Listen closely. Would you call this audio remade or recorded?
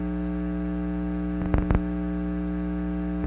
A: recorded